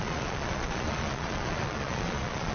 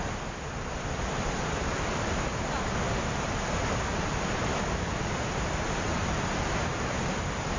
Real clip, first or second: second